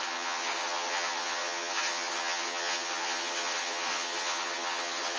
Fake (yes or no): yes